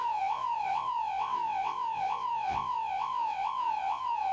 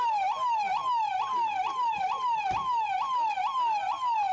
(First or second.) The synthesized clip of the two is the first